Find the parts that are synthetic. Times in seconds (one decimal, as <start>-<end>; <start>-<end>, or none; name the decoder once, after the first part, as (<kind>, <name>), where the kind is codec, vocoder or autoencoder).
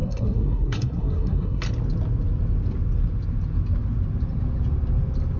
0.0-1.6 (codec, SNAC)